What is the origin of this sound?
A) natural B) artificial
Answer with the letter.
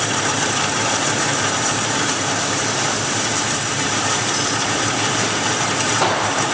B